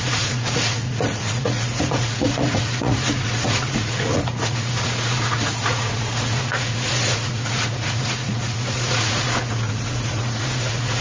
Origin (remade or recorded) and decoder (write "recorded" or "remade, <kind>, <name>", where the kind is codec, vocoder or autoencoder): remade, vocoder, Vocos